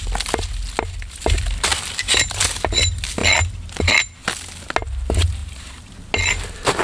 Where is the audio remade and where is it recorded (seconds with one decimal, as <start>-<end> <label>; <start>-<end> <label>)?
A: 0.0-1.7 recorded; 1.7-2.4 remade; 2.4-5.4 recorded; 5.4-5.9 remade; 5.9-6.8 recorded